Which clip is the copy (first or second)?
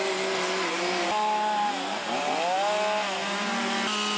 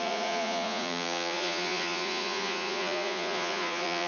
second